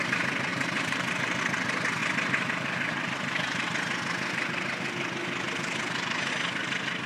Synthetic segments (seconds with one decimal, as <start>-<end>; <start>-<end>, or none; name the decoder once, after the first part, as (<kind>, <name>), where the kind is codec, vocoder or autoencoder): 0.5-1.4 (vocoder, BigVGAN v2)